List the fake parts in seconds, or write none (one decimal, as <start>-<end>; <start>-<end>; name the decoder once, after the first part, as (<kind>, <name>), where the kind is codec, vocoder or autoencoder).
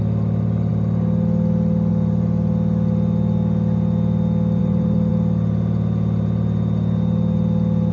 4.6-5.1 (vocoder, BigVGAN v2)